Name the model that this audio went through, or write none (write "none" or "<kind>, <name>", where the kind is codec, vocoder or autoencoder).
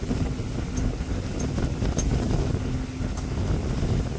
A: none